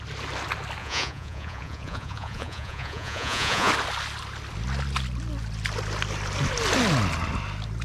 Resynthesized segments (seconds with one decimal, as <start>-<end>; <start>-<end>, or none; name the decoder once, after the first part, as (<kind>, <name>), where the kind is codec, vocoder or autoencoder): 0.8-3.7 (vocoder, Vocos)